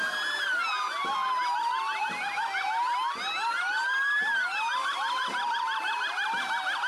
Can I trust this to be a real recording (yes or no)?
yes